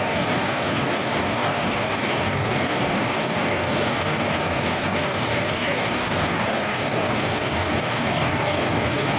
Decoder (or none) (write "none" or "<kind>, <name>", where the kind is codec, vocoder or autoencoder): codec, DAC